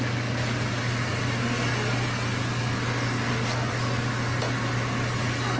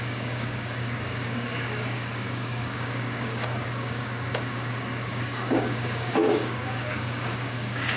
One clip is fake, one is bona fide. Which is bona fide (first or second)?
first